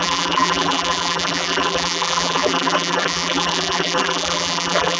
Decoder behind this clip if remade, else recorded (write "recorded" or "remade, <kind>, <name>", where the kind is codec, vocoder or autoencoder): remade, vocoder, BigVGAN v2